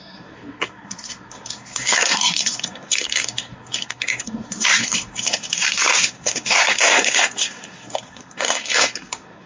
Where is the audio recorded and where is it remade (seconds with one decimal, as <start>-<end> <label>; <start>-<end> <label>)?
0.0-9.5 remade